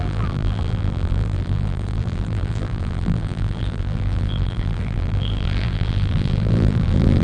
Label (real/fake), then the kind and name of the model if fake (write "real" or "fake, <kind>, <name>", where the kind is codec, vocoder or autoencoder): fake, vocoder, BigVGAN v2